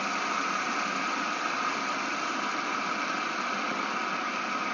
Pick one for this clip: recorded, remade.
recorded